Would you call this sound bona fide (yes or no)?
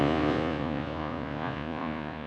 no